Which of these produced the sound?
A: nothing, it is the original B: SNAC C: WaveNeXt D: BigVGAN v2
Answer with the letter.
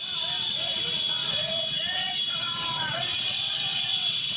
C